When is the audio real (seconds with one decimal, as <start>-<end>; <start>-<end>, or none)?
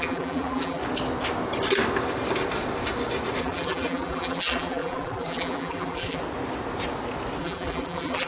0.8-3.4; 6.2-7.4